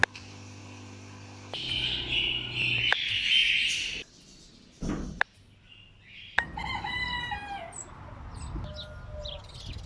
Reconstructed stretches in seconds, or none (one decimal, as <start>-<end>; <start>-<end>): none